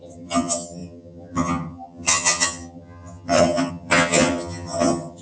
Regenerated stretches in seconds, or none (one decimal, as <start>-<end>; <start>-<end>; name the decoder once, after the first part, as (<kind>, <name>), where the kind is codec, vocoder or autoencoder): 0.0-5.2 (vocoder, HiFi-GAN)